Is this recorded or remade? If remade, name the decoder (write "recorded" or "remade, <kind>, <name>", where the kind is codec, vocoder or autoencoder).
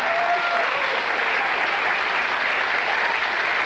recorded